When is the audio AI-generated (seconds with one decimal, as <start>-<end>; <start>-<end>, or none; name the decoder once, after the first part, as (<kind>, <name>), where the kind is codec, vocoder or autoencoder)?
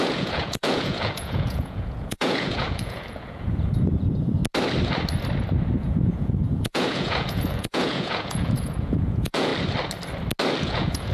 0.0-4.4 (vocoder, Vocos); 5.8-9.5; 10.6-11.1